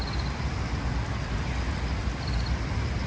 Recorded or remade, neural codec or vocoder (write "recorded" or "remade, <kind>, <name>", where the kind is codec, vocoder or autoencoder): recorded